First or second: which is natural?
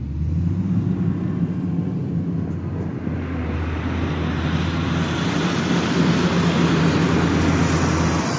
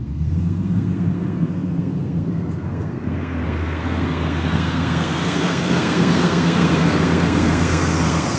first